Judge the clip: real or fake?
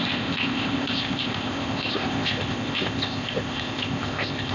fake